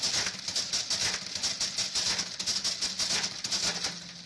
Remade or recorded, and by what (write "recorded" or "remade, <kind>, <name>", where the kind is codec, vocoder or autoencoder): recorded